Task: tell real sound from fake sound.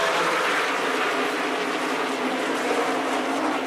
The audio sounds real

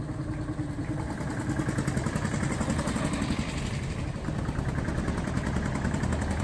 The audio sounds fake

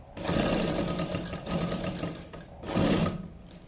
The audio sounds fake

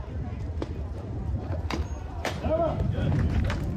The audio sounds fake